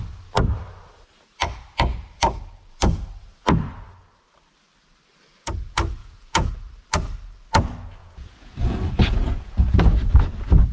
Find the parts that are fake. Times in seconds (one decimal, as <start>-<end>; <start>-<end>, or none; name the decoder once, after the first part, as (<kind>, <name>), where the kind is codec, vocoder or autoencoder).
6.0-6.5 (vocoder, Vocos); 8.0-10.1